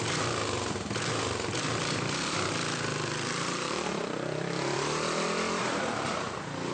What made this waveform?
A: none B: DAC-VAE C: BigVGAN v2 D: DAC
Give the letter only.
C